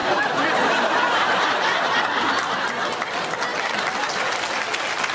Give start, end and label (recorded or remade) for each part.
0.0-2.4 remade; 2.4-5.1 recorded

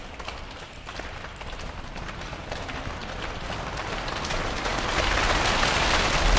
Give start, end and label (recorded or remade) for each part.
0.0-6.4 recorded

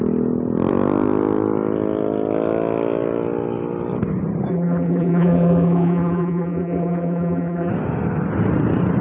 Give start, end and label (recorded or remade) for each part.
0.0-4.5 recorded; 4.5-7.7 remade; 7.7-9.0 recorded